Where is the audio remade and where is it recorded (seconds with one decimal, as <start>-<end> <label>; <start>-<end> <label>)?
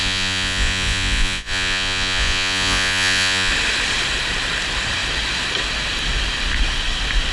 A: 0.0-3.5 remade; 3.5-7.3 recorded